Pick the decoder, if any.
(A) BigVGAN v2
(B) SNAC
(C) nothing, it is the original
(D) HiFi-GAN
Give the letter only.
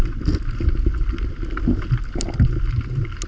C